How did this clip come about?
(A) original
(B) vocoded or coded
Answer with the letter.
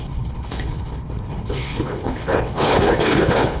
B